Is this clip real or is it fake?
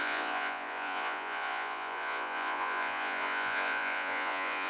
fake